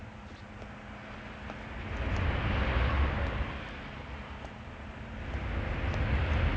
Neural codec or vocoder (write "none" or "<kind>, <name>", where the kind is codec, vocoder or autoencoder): none